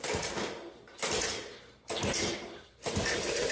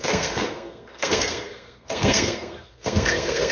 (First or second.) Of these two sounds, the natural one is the first